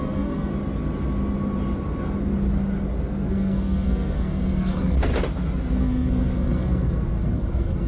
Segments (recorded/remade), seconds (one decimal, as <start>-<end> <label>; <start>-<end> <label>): 0.0-0.5 remade; 0.5-3.3 recorded; 3.3-5.1 remade; 5.1-5.7 recorded; 5.7-7.9 remade